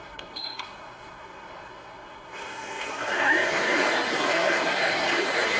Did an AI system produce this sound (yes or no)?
yes